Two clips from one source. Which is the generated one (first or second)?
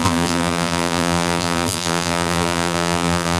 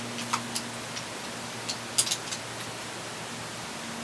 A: first